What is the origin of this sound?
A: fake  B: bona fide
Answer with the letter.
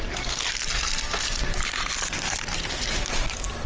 B